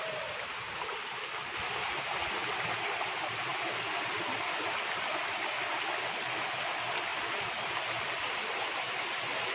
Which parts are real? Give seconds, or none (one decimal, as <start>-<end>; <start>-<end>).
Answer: 0.0-9.5